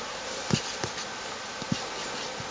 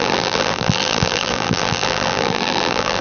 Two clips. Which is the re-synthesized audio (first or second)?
second